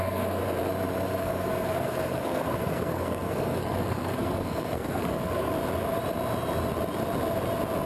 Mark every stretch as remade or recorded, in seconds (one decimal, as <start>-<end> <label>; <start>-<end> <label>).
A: 0.0-0.4 remade; 0.4-1.2 recorded; 1.2-5.5 remade; 5.5-7.9 recorded